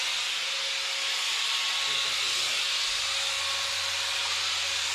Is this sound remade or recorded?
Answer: recorded